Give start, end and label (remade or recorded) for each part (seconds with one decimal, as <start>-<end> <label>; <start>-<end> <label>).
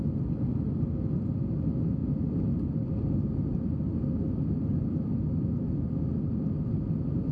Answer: 0.0-7.3 recorded